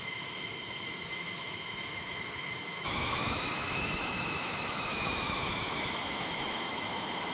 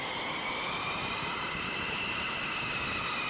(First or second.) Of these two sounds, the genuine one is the second